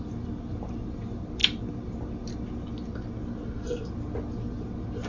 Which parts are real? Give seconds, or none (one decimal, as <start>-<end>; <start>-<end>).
0.0-5.1